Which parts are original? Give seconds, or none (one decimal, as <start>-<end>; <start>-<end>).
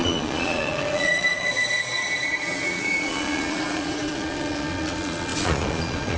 none